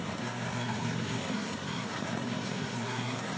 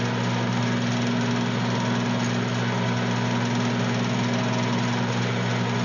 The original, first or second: second